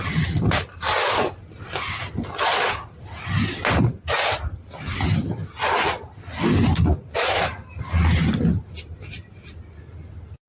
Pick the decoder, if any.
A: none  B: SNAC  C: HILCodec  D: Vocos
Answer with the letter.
A